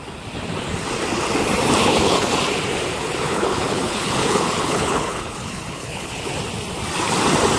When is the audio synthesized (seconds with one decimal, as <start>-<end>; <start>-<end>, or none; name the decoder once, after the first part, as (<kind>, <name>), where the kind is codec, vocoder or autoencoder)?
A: 1.8-2.3 (codec, HILCodec); 3.1-6.3